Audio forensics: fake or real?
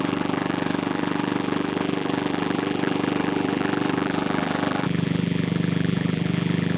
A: fake